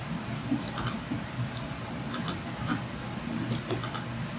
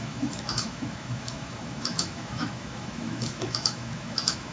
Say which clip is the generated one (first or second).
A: second